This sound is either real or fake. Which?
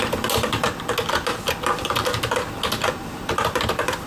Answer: real